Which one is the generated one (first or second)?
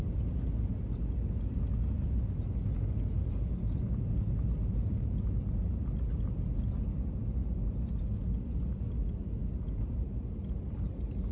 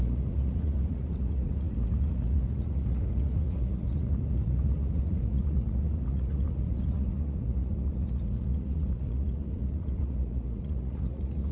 second